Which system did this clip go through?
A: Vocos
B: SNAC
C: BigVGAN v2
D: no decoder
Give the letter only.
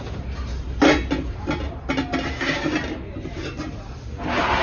D